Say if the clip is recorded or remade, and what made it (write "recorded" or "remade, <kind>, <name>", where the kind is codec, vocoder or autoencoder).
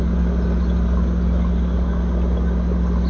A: recorded